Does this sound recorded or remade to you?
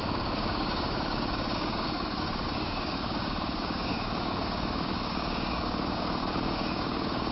remade